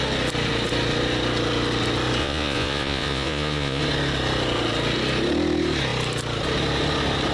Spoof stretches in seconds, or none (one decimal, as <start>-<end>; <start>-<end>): 2.2-3.8

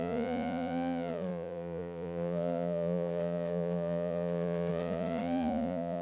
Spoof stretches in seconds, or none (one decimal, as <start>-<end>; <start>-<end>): 0.0-6.0

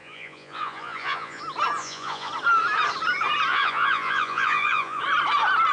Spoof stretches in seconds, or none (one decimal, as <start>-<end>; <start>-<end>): 0.0-1.4; 1.8-2.3; 3.5-5.0